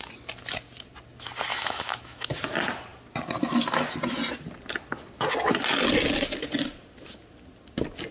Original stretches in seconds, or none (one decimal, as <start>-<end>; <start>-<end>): 0.0-1.5; 2.3-8.1